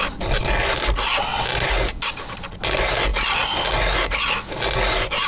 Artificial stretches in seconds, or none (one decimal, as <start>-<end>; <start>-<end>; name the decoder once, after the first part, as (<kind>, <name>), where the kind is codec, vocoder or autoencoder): none